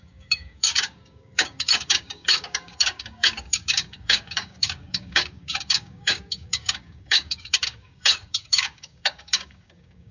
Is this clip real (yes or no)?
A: no